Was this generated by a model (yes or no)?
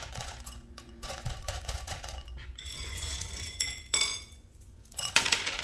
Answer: yes